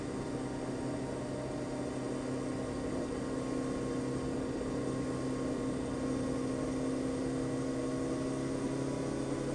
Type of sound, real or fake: real